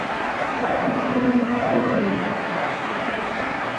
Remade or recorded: remade